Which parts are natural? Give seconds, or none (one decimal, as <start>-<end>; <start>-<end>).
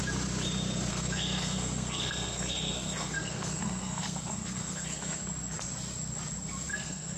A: 0.0-0.9; 5.2-6.7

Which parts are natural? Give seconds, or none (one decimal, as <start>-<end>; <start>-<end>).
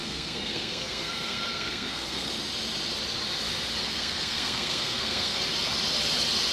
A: 2.3-3.8; 5.4-6.5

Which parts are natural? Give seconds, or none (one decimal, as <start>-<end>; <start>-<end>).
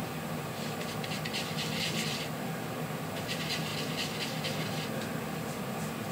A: 0.0-6.1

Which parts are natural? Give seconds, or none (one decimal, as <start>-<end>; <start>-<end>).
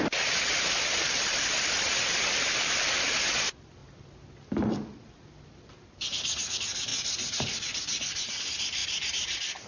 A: 0.0-9.7